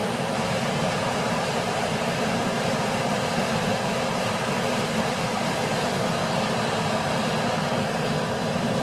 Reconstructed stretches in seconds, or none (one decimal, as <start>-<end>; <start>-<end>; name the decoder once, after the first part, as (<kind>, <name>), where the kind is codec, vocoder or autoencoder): 0.0-5.3 (vocoder, BigVGAN v2); 8.2-8.8